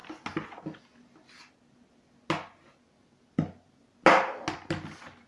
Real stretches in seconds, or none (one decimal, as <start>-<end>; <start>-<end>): 0.0-5.3